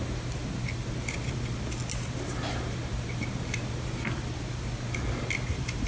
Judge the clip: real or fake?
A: real